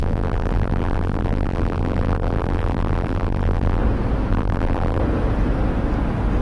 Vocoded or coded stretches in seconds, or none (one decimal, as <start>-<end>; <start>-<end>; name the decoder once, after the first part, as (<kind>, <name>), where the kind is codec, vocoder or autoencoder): 0.0-3.8 (vocoder, BigVGAN v2); 4.3-5.0